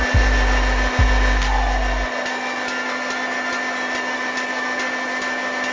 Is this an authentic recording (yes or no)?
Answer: yes